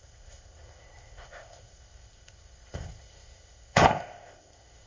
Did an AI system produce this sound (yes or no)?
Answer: yes